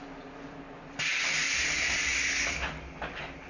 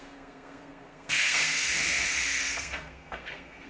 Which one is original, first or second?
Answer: first